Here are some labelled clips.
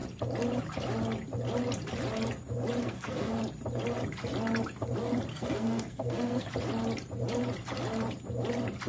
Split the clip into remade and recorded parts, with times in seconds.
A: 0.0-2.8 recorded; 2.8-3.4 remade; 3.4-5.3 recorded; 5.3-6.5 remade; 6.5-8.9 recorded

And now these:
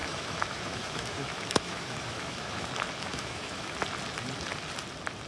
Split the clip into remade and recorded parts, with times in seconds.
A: 0.0-2.7 remade; 2.7-3.1 recorded; 3.1-3.7 remade; 3.7-5.3 recorded

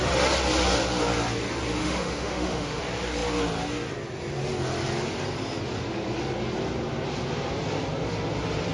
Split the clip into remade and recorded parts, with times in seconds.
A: 0.0-1.8 recorded; 1.8-2.8 remade; 2.8-8.7 recorded

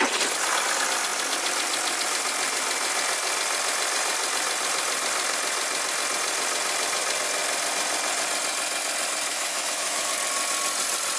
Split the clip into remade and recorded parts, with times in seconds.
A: 0.0-9.3 recorded; 9.3-10.1 remade; 10.1-11.2 recorded

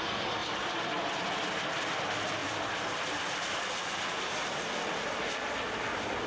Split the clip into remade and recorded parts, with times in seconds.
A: 0.0-0.4 recorded; 0.4-0.9 remade; 0.9-2.4 recorded; 2.4-4.2 remade; 4.2-6.3 recorded

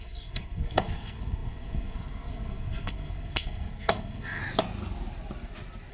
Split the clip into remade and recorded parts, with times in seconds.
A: 0.0-4.4 remade; 4.4-5.9 recorded

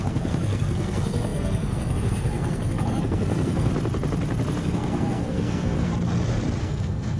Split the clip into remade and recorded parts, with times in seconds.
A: 0.0-3.7 remade; 3.7-4.6 recorded; 4.6-5.9 remade; 5.9-6.6 recorded; 6.6-7.2 remade